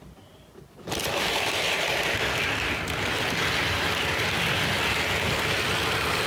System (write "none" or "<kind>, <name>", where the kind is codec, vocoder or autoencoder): none